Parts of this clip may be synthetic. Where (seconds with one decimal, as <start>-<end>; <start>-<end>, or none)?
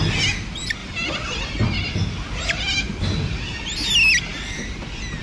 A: 0.8-3.4; 4.3-5.2